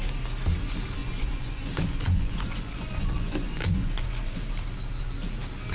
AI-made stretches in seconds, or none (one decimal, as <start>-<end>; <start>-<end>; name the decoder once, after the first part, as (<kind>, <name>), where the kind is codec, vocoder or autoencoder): 1.0-4.4 (vocoder, Vocos)